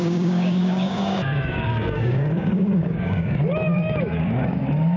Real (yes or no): no